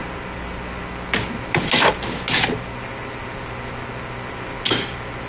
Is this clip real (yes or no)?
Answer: yes